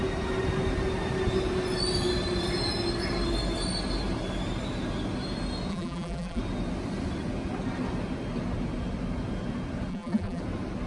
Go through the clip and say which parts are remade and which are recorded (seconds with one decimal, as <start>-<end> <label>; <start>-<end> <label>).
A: 0.0-5.7 recorded; 5.7-6.4 remade; 6.4-9.9 recorded; 9.9-10.4 remade; 10.4-10.9 recorded